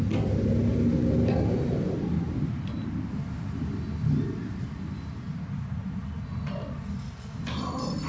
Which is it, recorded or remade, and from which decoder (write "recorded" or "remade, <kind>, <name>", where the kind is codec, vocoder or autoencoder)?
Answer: recorded